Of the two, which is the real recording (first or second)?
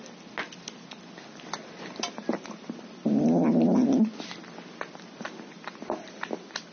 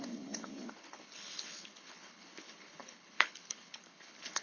first